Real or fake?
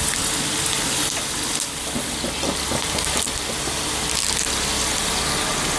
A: real